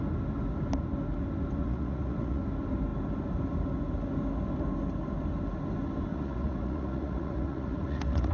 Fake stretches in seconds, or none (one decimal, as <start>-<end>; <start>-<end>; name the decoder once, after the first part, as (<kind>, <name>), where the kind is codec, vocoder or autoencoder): 1.6-2.4 (vocoder, Vocos); 6.1-8.3